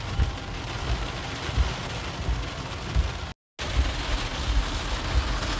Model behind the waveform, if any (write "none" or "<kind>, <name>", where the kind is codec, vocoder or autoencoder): none